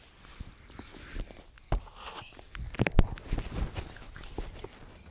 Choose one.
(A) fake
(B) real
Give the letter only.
B